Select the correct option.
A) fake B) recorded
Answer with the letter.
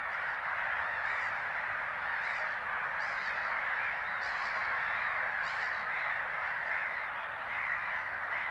B